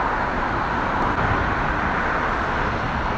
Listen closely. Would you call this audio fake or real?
real